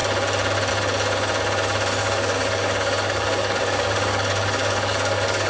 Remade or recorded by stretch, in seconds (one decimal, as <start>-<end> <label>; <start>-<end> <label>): 0.0-2.0 recorded; 2.0-5.5 remade